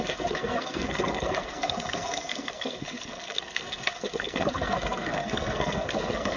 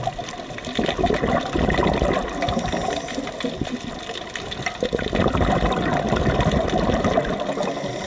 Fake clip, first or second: first